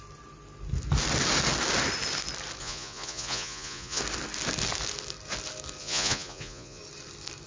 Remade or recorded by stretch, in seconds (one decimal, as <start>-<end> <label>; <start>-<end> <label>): 0.0-2.6 recorded; 2.6-4.0 remade; 4.0-5.8 recorded; 5.8-6.8 remade; 6.8-7.5 recorded